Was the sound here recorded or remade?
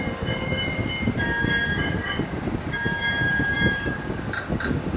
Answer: remade